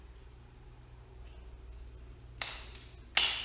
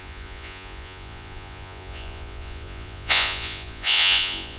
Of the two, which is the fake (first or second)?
second